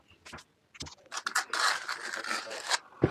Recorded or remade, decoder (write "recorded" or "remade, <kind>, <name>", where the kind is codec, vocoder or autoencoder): recorded